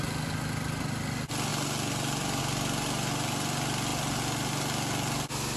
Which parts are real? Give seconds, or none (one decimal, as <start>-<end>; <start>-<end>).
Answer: 0.0-5.6